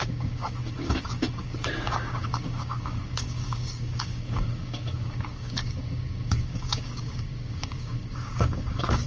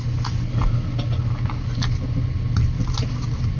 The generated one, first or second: first